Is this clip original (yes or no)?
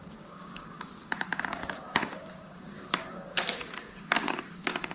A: no